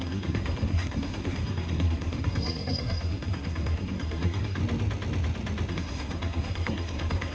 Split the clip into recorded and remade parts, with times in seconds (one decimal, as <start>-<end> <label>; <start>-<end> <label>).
0.0-4.6 remade; 4.6-5.7 recorded; 5.7-7.3 remade